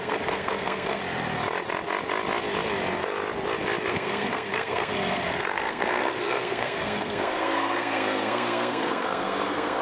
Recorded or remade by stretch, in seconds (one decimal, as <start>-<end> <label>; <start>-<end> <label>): 0.0-1.0 remade; 1.0-3.9 recorded; 3.9-9.8 remade